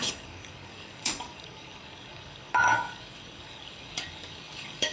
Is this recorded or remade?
remade